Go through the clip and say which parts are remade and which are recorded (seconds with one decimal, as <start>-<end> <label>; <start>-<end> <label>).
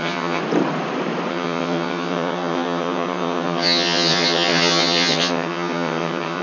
0.0-0.4 remade; 0.4-1.3 recorded; 1.3-6.4 remade